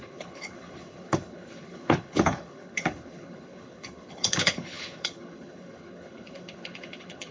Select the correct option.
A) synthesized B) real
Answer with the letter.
A